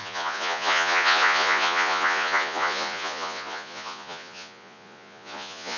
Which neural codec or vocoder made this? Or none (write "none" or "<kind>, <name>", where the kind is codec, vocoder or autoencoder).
vocoder, Vocos